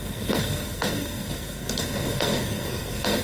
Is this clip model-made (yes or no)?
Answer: yes